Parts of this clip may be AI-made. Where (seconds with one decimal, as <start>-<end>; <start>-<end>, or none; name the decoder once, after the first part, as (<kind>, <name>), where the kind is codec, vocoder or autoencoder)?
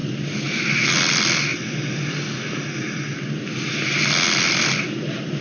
none